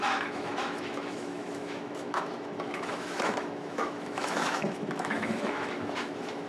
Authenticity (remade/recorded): remade